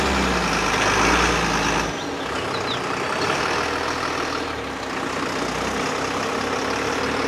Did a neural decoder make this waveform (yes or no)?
no